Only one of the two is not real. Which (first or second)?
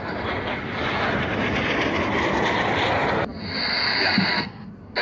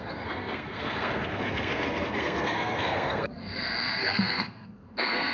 second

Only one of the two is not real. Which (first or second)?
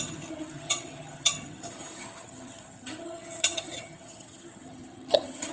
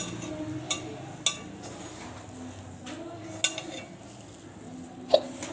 first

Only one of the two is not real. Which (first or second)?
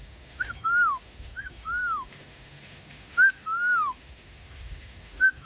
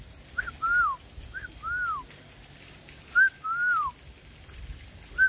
first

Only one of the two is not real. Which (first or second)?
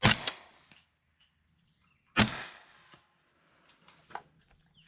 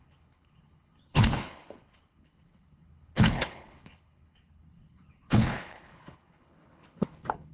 second